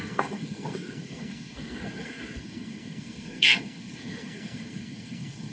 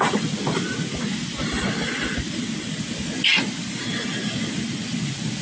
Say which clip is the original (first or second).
second